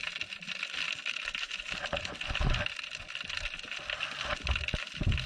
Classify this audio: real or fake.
real